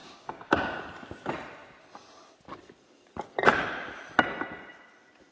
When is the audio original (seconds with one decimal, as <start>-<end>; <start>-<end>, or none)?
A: 0.8-5.3